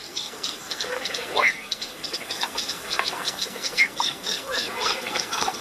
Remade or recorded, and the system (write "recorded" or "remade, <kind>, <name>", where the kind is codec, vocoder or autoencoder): remade, codec, SNAC